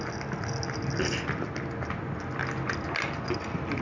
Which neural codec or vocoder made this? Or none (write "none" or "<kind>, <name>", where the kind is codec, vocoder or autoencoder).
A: none